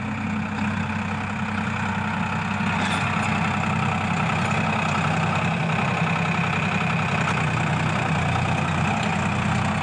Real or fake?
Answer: real